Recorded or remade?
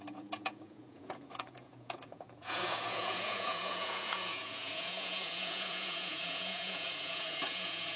remade